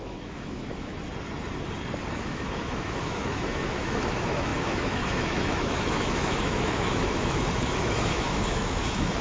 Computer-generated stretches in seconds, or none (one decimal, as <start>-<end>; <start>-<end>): 0.0-0.9; 2.1-9.2